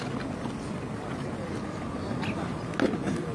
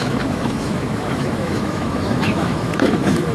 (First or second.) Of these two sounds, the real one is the first